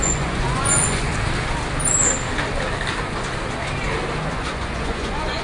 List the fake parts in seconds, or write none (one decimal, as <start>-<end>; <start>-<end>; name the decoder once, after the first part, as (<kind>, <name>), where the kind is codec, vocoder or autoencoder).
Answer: 0.0-1.1 (vocoder, Vocos); 4.3-5.4